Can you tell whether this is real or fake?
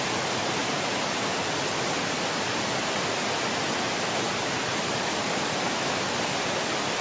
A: real